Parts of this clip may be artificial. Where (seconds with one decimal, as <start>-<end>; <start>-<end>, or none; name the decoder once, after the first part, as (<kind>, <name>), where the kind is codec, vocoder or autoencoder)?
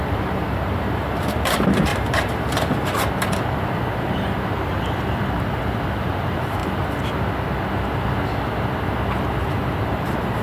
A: 0.0-6.6 (vocoder, BigVGAN v2); 9.4-10.4